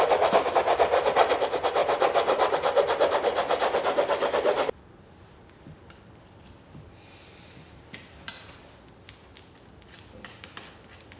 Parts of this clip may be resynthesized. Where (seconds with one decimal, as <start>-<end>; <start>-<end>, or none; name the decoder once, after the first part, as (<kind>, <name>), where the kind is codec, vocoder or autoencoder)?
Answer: none